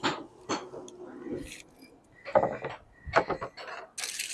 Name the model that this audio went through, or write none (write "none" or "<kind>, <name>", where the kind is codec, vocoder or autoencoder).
none